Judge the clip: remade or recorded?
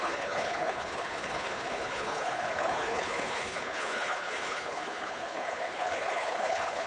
remade